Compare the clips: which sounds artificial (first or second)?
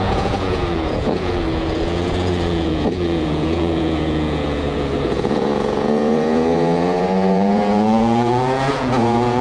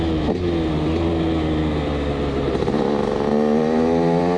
first